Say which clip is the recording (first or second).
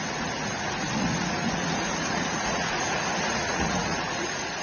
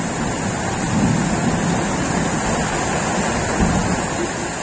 second